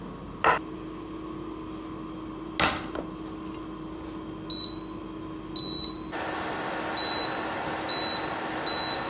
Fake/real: real